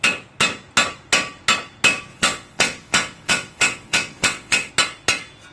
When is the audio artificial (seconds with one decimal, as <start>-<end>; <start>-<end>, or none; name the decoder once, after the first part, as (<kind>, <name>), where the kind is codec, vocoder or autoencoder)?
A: 2.1-4.7 (vocoder, WaveNeXt)